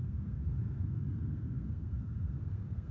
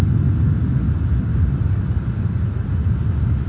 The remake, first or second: first